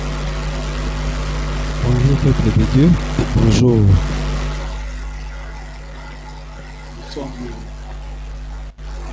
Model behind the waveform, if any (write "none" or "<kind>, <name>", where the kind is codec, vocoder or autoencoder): none